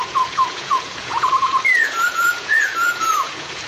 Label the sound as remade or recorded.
remade